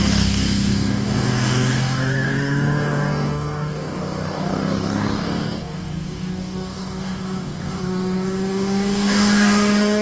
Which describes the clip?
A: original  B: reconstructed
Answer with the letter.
B